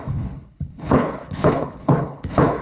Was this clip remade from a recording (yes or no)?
yes